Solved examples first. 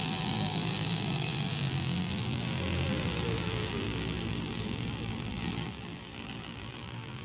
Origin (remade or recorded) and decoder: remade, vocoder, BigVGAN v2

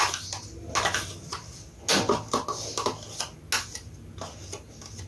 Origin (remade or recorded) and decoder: recorded